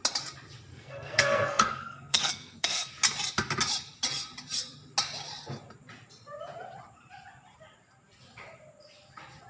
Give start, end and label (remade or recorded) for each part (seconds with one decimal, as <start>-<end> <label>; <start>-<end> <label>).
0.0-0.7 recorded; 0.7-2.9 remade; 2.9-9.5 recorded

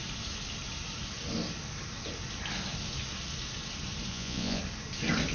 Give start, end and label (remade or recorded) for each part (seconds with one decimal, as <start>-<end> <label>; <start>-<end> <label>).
0.0-4.1 recorded; 4.1-4.6 remade; 4.6-5.3 recorded

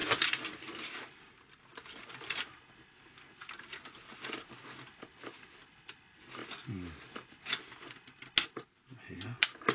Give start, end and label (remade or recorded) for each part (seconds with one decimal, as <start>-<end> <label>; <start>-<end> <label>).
0.0-2.4 remade; 2.4-9.7 recorded

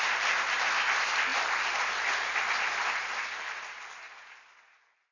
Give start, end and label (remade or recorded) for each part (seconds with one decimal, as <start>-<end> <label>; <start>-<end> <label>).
0.0-1.3 recorded; 1.3-2.0 remade; 2.0-5.1 recorded